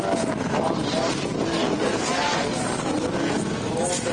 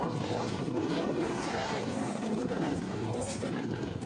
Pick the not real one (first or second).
second